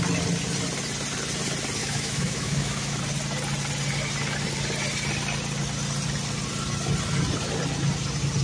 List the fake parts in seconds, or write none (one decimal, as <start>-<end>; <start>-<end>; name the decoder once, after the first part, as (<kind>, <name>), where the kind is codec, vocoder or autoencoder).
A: 1.8-3.0 (autoencoder, DAC-VAE)